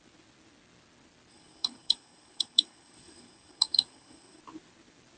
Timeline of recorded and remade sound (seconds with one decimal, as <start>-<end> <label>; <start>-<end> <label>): 0.0-1.3 recorded; 1.3-4.4 remade; 4.4-5.2 recorded